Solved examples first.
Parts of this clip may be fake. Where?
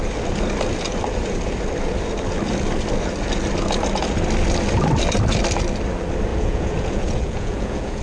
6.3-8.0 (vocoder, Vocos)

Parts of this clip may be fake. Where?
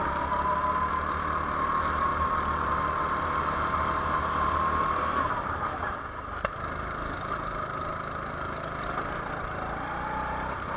none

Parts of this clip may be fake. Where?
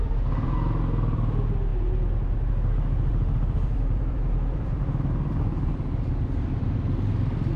3.1-6.9 (vocoder, BigVGAN v2)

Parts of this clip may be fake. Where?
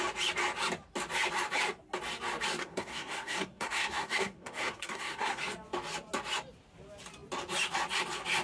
2.6-5.4 (codec, SNAC)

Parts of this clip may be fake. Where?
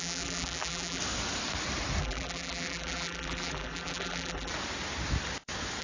0.0-1.0 (vocoder, BigVGAN v2); 2.0-4.5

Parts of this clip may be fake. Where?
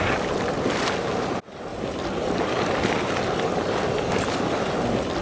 none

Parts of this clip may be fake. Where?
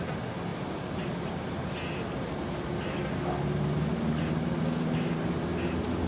none